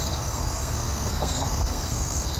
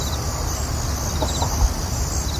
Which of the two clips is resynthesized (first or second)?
first